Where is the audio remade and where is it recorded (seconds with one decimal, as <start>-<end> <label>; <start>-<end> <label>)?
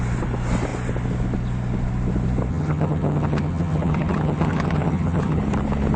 0.0-2.5 recorded; 2.5-5.4 remade; 5.4-6.0 recorded